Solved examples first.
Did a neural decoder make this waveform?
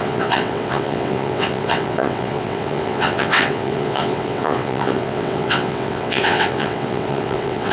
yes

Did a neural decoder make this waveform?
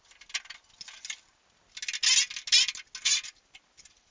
no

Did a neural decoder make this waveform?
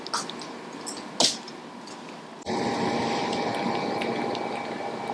no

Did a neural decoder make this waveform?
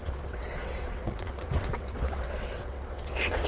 yes